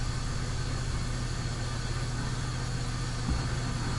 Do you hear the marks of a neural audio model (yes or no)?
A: no